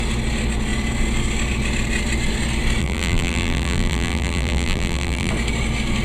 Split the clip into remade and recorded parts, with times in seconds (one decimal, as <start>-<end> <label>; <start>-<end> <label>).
0.0-2.8 recorded; 2.8-5.3 remade; 5.3-6.0 recorded